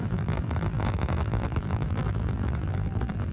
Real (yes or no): no